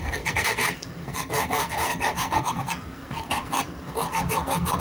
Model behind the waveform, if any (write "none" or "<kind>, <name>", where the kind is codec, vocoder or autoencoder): codec, SNAC